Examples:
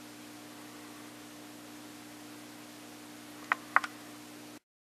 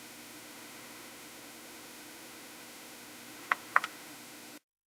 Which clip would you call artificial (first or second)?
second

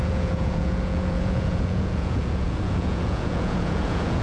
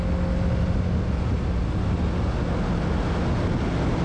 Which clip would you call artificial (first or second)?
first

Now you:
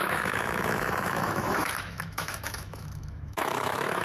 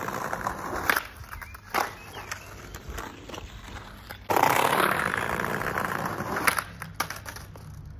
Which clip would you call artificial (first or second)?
first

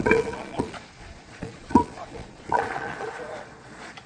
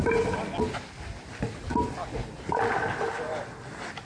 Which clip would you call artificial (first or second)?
first